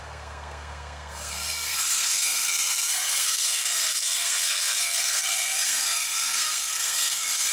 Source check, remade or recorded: remade